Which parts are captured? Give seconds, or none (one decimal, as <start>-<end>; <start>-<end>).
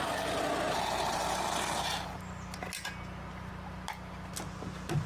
0.0-5.1